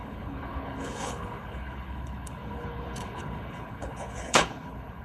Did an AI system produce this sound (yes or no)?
yes